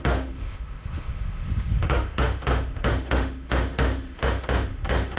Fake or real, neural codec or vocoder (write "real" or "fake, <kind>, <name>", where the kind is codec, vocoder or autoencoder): fake, autoencoder, DAC-VAE